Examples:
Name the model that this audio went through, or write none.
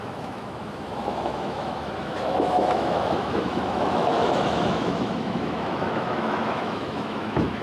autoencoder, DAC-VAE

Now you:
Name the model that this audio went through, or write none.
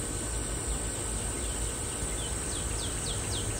none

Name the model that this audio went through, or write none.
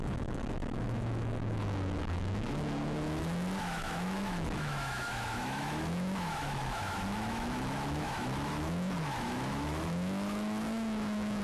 autoencoder, DAC-VAE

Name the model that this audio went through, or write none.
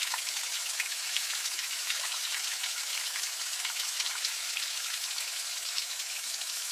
autoencoder, DAC-VAE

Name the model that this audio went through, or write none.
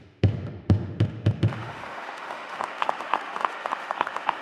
autoencoder, DAC-VAE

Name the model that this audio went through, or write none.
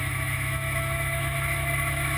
autoencoder, DAC-VAE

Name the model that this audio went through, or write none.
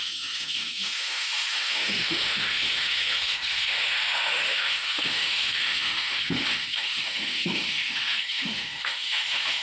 autoencoder, DAC-VAE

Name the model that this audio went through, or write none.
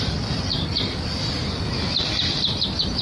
none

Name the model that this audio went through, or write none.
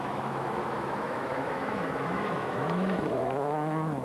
autoencoder, DAC-VAE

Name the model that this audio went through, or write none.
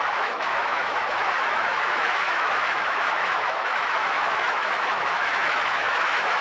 autoencoder, DAC-VAE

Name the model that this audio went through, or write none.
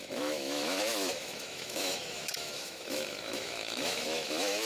autoencoder, DAC-VAE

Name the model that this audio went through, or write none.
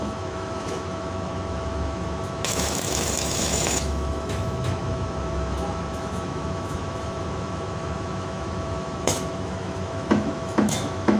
autoencoder, DAC-VAE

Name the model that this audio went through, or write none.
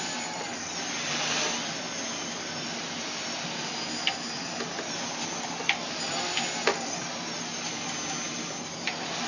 none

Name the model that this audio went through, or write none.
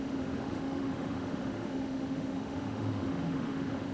autoencoder, DAC-VAE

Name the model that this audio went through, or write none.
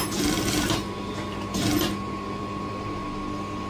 none